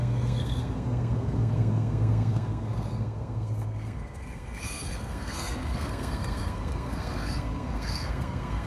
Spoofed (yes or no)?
yes